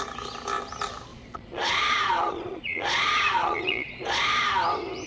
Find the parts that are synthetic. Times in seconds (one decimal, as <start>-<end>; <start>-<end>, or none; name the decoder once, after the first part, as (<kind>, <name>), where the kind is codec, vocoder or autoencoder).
1.1-4.2 (vocoder, Vocos)